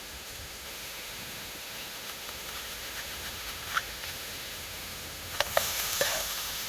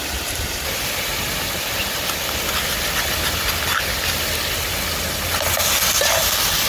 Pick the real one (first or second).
second